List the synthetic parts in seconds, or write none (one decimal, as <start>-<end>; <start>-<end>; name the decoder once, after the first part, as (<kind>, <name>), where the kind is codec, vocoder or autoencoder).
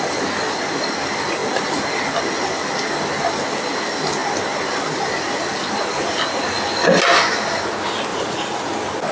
8.1-8.7 (vocoder, Vocos)